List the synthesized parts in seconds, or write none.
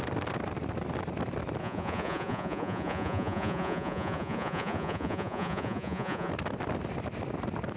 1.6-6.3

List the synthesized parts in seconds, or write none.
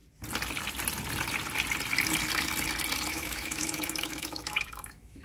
3.1-5.2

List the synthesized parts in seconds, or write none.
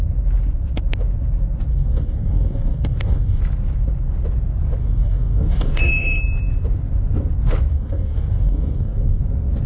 1.7-3.4; 4.8-6.2; 7.7-9.2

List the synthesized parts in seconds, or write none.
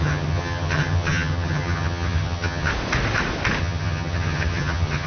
0.0-2.7; 3.6-5.1